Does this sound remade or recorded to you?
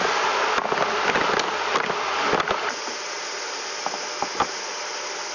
recorded